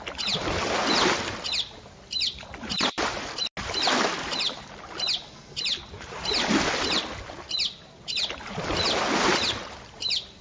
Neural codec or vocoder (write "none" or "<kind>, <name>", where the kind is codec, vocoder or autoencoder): none